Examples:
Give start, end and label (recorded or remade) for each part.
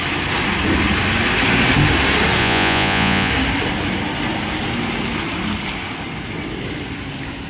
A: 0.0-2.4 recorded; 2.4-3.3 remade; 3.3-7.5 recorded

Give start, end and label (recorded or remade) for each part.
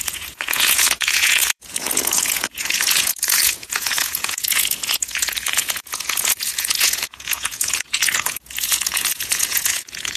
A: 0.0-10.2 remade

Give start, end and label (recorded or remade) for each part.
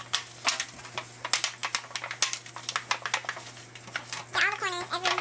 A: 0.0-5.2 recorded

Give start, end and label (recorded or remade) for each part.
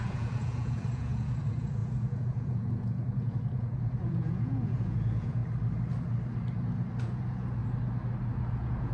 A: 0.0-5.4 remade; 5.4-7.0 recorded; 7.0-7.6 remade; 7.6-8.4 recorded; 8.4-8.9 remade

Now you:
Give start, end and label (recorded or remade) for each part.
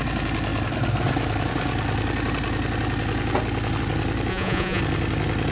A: 0.0-4.3 recorded; 4.3-4.8 remade; 4.8-5.5 recorded